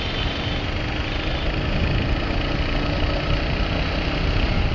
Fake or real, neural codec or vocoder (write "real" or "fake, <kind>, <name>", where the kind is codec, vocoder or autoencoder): real